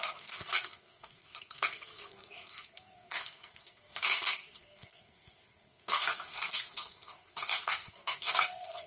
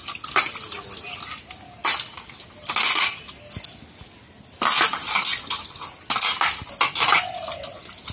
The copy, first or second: first